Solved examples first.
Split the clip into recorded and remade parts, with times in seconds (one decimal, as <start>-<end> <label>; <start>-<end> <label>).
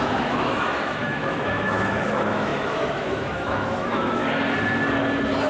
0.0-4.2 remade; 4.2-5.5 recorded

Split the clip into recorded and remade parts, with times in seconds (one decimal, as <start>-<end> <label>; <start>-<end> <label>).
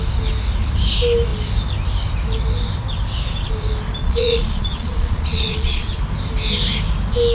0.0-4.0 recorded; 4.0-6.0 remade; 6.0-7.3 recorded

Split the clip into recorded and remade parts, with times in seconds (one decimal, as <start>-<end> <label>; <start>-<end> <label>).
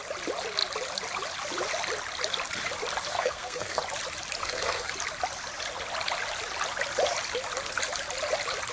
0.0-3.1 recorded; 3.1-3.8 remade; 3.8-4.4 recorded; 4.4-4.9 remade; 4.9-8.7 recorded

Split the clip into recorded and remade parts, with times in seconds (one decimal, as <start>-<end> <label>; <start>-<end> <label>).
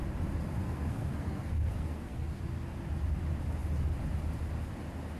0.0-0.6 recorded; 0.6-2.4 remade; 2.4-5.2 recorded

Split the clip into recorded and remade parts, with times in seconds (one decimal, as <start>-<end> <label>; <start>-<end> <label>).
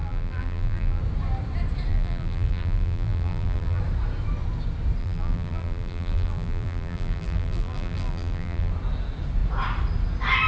0.0-1.0 remade; 1.0-1.9 recorded; 1.9-3.8 remade; 3.8-5.0 recorded; 5.0-8.7 remade; 8.7-10.5 recorded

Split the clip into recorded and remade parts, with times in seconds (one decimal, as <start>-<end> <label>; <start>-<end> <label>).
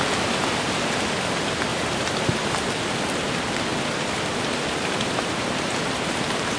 0.0-1.7 recorded; 1.7-2.7 remade; 2.7-3.7 recorded; 3.7-6.6 remade